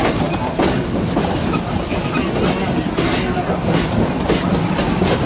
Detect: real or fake real